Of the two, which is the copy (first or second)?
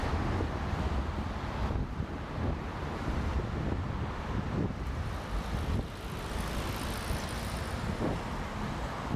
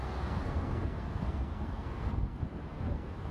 second